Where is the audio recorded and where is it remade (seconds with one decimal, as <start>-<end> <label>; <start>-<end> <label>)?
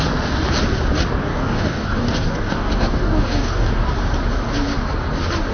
0.0-1.3 recorded; 1.3-3.7 remade; 3.7-5.5 recorded